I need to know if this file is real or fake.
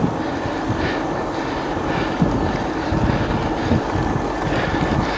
real